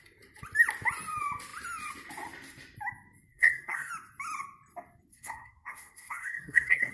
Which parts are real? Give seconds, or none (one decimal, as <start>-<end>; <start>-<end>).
0.0-3.3; 3.9-5.1